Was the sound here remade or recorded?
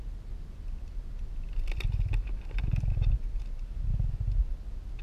recorded